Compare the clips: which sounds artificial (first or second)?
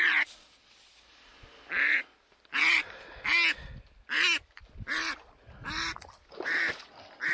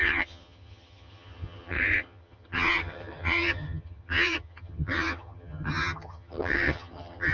second